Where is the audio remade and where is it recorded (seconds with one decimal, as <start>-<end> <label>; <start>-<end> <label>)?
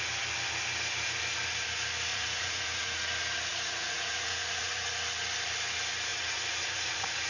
0.0-2.1 recorded; 2.1-3.0 remade; 3.0-3.5 recorded; 3.5-4.9 remade; 4.9-6.1 recorded; 6.1-7.3 remade